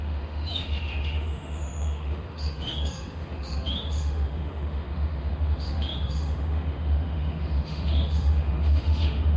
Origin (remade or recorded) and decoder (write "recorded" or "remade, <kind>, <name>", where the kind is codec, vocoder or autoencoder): remade, autoencoder, DAC-VAE